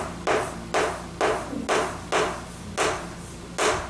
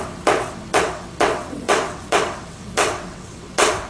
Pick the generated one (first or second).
second